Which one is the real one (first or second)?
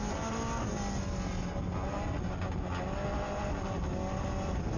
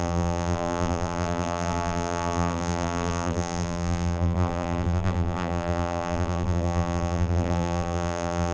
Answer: first